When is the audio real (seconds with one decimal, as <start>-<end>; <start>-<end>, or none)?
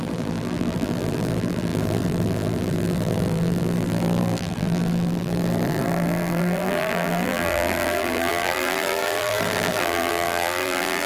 none